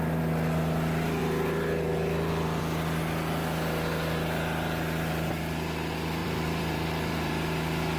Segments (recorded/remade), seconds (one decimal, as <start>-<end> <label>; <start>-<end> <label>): 0.0-6.2 recorded; 6.2-7.3 remade; 7.3-8.0 recorded